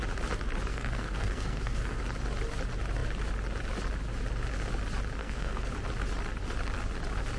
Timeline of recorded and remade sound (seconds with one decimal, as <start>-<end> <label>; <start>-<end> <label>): 0.0-0.7 recorded; 0.7-2.0 remade; 2.0-5.2 recorded; 5.2-5.7 remade; 5.7-7.4 recorded